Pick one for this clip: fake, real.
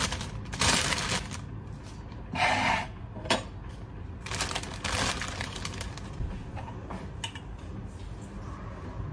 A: real